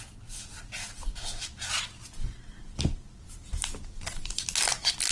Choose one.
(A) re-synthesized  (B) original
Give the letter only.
B